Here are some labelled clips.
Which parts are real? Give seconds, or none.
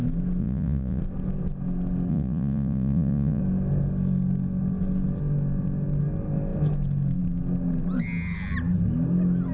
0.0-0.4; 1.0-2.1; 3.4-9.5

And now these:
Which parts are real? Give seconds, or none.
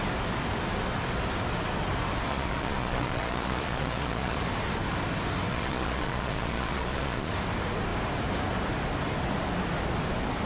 0.0-2.3; 4.4-5.5; 7.3-10.5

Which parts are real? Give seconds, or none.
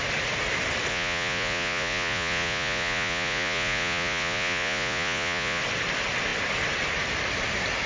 0.0-0.9; 5.6-7.9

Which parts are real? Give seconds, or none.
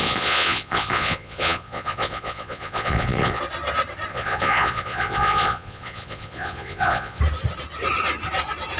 3.4-4.1; 7.2-8.8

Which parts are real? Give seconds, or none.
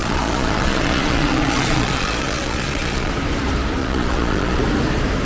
3.1-3.8; 4.6-5.2